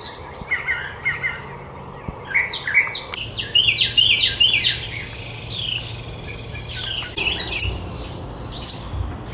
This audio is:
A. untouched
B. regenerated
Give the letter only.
A